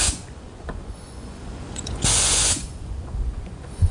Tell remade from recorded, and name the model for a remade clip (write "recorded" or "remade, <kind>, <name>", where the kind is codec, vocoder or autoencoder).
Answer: remade, vocoder, Vocos